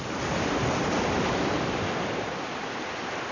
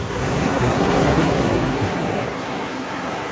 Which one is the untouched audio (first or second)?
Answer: first